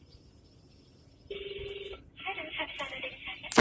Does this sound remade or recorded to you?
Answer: recorded